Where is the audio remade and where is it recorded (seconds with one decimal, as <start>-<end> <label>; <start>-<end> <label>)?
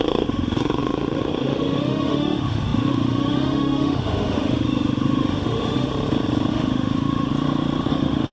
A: 0.0-5.9 remade; 5.9-6.5 recorded; 6.5-7.3 remade; 7.3-7.9 recorded; 7.9-8.3 remade